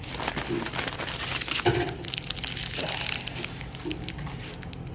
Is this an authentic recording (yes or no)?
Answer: yes